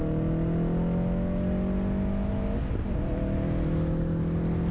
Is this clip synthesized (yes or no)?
no